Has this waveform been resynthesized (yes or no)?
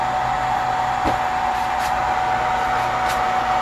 no